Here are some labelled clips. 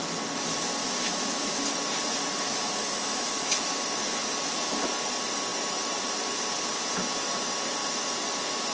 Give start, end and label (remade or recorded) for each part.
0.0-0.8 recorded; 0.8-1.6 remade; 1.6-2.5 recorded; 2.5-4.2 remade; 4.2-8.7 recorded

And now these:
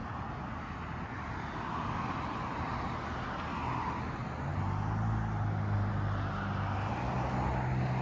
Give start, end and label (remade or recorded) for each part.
0.0-8.0 recorded

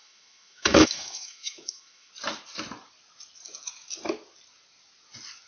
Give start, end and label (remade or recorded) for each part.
0.0-2.1 remade; 2.1-5.5 recorded

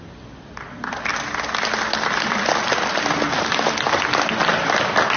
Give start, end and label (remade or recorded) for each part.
0.0-5.2 recorded

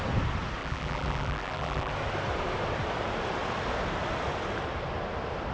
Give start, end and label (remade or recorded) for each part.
0.0-0.6 recorded; 0.6-1.9 remade; 1.9-5.5 recorded